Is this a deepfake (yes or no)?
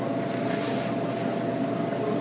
no